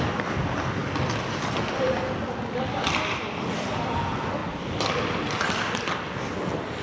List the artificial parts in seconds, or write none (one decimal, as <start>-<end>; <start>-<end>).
none